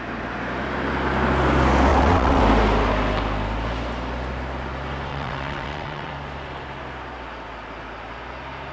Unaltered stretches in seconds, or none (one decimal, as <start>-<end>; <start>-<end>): 0.0-1.9; 2.4-5.1; 6.1-8.7